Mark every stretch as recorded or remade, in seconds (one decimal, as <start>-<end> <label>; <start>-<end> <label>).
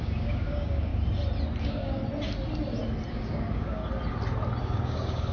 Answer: 0.0-0.9 remade; 0.9-1.6 recorded; 1.6-2.0 remade; 2.0-3.1 recorded; 3.1-3.8 remade; 3.8-4.6 recorded; 4.6-5.3 remade